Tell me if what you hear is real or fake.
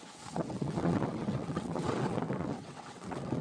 fake